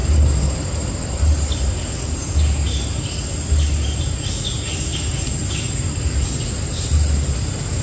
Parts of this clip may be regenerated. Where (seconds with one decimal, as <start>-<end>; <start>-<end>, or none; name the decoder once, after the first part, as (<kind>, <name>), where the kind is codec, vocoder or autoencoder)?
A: none